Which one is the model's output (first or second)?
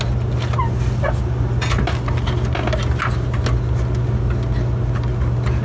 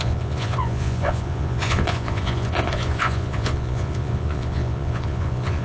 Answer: second